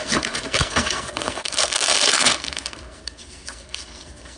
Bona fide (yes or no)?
no